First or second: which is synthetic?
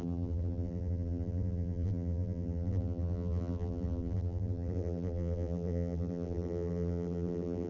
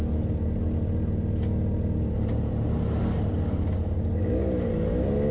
first